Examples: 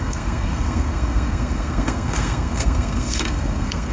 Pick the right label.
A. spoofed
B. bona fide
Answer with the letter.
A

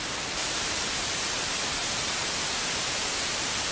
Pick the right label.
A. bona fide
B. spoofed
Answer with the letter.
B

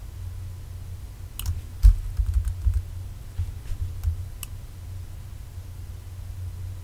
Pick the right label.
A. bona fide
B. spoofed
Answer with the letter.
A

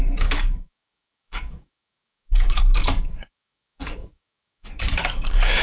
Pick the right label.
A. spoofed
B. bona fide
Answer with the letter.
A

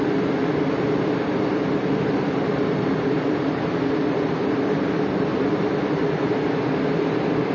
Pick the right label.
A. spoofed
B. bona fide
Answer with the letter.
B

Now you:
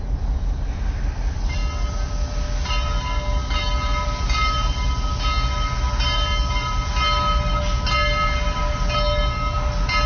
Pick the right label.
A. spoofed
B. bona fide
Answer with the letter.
B